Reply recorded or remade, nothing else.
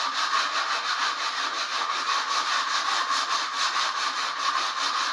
recorded